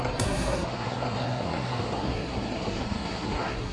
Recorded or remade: remade